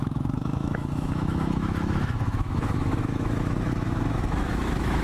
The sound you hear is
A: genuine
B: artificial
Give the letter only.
B